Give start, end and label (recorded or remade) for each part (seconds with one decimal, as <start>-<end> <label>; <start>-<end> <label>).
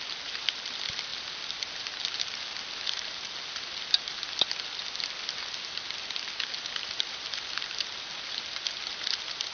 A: 0.0-9.5 recorded